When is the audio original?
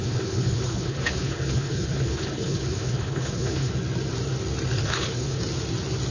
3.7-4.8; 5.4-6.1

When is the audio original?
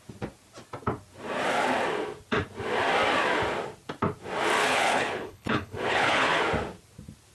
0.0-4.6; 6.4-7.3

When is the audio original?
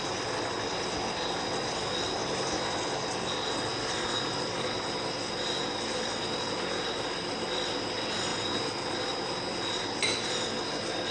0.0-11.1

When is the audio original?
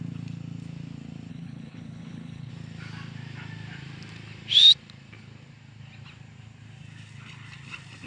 0.0-1.3; 2.5-8.1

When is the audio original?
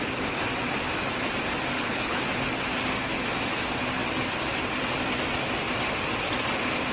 0.0-1.7; 2.2-6.9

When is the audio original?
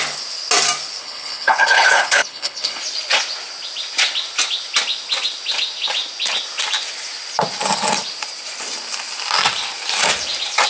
0.0-1.0; 2.8-10.7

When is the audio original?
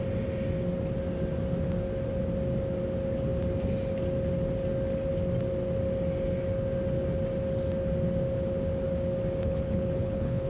0.0-9.4